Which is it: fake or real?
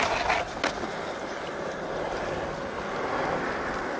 real